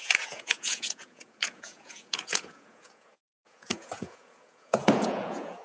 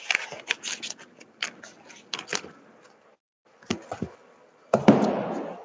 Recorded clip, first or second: second